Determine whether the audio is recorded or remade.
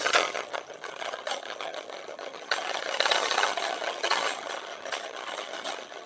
remade